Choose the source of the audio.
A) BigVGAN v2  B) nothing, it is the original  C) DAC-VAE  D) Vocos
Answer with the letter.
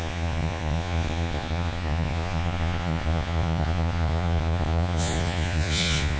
D